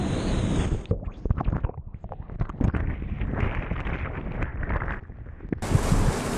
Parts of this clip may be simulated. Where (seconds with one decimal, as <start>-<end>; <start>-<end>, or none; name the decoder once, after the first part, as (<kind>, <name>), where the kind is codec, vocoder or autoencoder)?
none